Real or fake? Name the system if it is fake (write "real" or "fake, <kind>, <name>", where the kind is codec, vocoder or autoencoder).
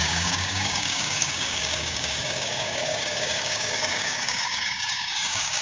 fake, codec, DAC